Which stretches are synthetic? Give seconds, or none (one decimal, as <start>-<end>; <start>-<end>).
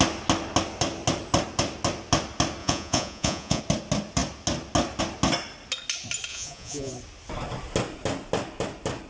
2.6-3.6; 6.3-6.9